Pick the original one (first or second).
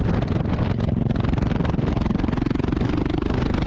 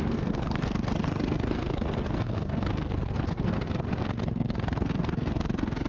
first